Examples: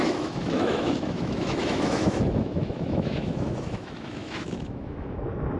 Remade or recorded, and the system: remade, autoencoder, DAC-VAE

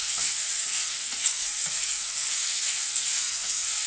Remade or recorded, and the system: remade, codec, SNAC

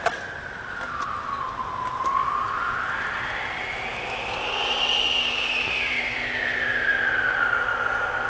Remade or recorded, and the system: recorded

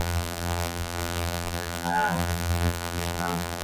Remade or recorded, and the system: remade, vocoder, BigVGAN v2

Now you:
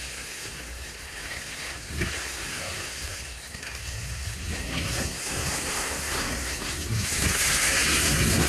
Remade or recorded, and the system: remade, codec, SNAC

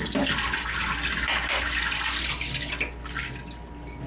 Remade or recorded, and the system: recorded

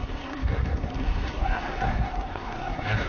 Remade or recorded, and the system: remade, codec, SNAC